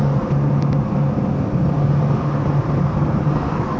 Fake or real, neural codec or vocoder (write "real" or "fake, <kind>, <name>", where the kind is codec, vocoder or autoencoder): real